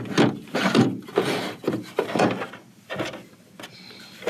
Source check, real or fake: real